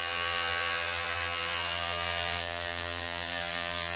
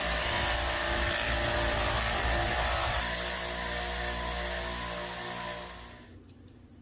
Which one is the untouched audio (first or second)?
second